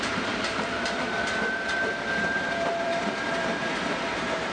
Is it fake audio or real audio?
fake